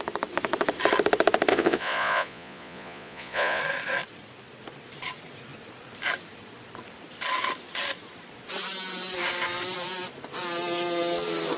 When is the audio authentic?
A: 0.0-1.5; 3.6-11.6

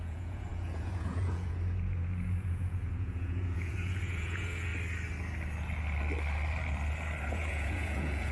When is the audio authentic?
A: 4.7-7.3